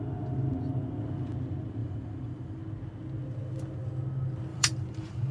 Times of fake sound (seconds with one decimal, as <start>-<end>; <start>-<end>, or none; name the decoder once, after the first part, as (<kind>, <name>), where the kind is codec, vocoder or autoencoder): 1.8-2.6 (vocoder, BigVGAN v2); 4.5-5.3

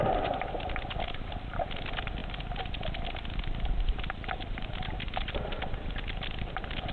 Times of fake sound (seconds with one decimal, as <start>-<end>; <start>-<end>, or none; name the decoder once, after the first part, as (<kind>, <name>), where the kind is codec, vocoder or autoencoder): none

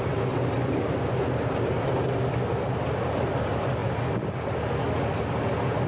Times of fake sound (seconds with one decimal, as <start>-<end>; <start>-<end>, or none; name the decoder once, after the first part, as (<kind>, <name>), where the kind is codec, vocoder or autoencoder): none

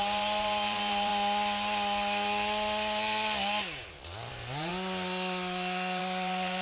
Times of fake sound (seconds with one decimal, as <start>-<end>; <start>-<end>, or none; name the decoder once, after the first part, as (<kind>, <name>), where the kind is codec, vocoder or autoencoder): 0.0-1.1 (vocoder, BigVGAN v2); 4.3-4.7; 6.0-6.6

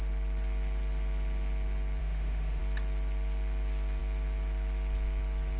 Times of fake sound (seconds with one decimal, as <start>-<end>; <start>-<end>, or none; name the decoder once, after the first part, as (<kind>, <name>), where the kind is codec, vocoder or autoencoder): 2.0-2.6 (autoencoder, DAC-VAE)

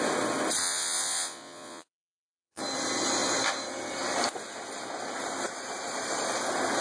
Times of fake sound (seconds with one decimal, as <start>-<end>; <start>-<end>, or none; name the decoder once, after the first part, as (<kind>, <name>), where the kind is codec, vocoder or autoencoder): 0.6-2.6 (vocoder, Vocos)

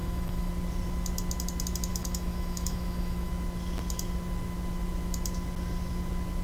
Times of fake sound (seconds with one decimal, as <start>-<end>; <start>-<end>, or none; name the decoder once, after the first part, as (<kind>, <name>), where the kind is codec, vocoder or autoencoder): 0.0-0.5 (autoencoder, DAC-VAE); 1.9-3.3

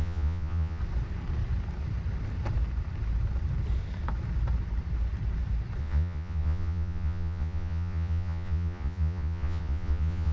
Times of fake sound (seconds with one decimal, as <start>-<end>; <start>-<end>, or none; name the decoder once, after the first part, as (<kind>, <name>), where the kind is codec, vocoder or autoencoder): 0.0-0.8 (vocoder, Vocos); 5.8-10.3